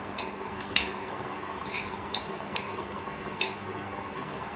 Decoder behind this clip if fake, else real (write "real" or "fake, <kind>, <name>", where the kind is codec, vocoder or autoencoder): fake, codec, SNAC